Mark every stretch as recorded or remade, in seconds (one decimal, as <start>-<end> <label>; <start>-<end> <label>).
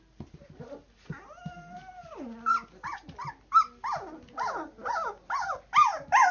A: 0.0-6.3 recorded